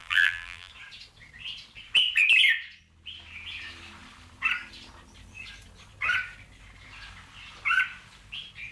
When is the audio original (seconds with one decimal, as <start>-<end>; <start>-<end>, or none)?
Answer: 0.7-8.7